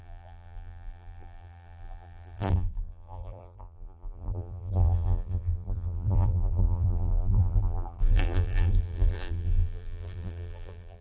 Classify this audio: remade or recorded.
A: remade